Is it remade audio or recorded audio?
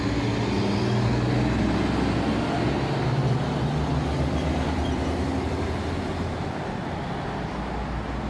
recorded